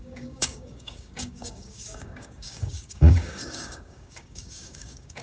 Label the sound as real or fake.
fake